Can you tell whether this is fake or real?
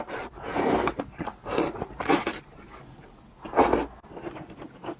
real